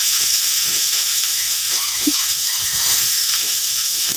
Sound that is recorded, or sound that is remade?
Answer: remade